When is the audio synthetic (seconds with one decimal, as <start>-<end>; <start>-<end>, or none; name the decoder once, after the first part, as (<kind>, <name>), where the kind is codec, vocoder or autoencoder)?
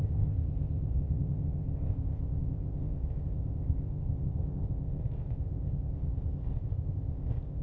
0.0-7.6 (codec, ZipCodec)